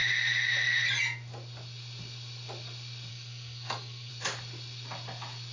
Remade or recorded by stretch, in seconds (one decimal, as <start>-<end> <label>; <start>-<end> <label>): 0.0-3.1 recorded; 3.1-4.1 remade; 4.1-5.5 recorded